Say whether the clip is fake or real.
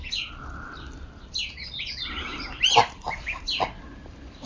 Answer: real